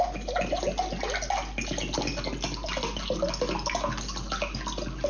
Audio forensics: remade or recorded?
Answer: recorded